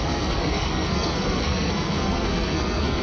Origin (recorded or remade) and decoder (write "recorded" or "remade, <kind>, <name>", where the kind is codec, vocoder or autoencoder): remade, codec, SNAC